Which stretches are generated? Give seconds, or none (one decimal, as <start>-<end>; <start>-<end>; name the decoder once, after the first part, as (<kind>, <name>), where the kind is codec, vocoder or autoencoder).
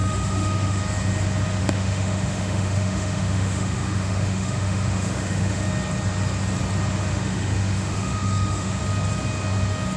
0.0-0.8 (autoencoder, DAC-VAE); 1.6-5.6; 7.1-8.8